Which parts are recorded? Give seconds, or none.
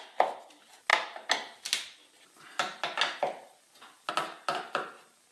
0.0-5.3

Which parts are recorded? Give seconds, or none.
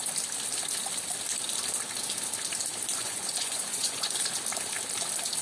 0.0-3.0; 4.3-5.4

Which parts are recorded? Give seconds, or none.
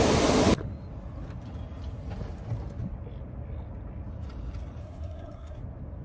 0.0-4.8; 5.6-6.0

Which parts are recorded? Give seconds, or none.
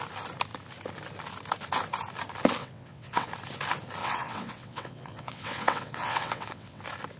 0.0-2.6; 3.3-4.0; 6.8-7.2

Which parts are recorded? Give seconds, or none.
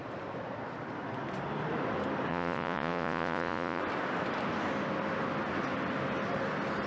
0.0-2.3; 3.8-6.9